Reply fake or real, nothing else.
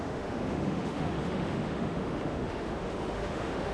fake